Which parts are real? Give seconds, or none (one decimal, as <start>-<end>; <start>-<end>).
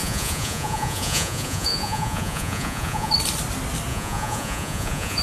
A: 3.1-3.9